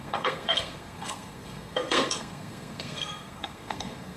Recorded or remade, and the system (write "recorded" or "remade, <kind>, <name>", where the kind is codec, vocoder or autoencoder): remade, codec, SNAC